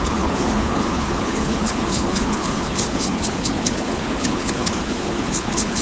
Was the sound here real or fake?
fake